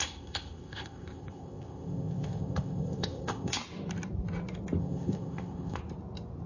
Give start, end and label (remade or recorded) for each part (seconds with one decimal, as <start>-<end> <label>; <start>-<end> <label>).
0.0-3.6 remade; 3.6-4.8 recorded; 4.8-5.8 remade; 5.8-6.5 recorded